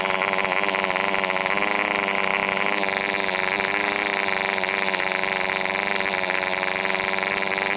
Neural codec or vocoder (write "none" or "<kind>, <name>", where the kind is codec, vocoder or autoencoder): none